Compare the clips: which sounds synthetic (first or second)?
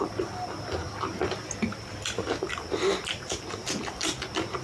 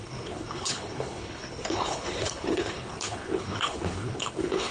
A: second